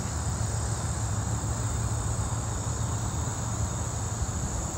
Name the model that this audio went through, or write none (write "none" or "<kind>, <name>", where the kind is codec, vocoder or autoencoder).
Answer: none